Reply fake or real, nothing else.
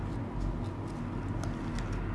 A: real